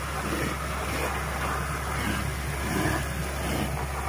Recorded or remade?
recorded